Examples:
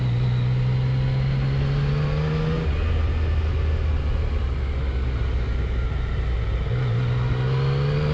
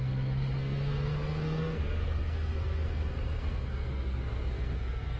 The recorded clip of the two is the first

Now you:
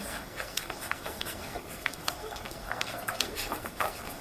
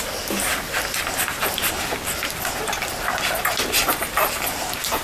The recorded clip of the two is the second